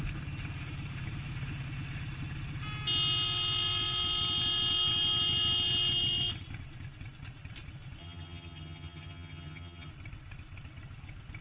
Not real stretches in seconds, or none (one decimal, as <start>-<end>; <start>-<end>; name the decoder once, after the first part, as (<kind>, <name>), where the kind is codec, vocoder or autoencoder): 8.0-9.9 (vocoder, HiFi-GAN)

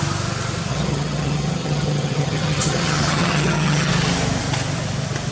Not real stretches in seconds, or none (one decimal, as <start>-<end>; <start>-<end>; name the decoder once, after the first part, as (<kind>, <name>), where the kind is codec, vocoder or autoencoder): 0.7-3.9 (vocoder, HiFi-GAN)

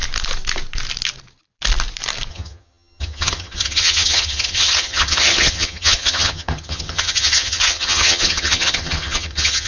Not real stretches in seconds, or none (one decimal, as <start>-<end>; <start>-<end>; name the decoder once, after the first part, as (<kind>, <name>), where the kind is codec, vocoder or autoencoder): 2.3-9.7 (vocoder, HiFi-GAN)